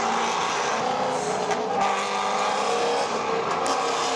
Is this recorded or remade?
recorded